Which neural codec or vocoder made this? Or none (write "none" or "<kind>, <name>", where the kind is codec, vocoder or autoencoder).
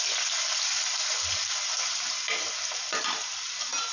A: none